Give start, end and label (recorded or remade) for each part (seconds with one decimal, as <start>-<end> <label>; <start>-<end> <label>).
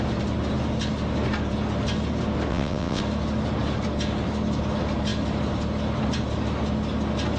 0.0-2.5 recorded; 2.5-3.0 remade; 3.0-7.4 recorded